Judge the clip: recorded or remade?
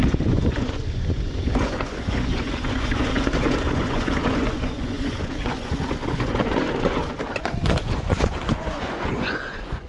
remade